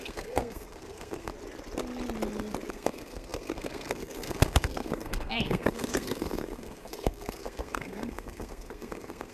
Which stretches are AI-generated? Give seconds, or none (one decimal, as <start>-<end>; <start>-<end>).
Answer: 0.0-1.3; 2.7-9.3